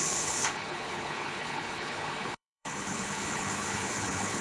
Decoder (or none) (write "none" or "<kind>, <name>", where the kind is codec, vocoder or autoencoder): codec, HILCodec